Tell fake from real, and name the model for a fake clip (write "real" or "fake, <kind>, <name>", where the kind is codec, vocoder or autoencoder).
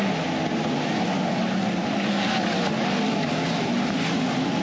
real